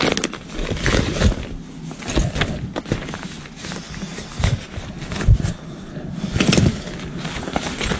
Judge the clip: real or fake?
real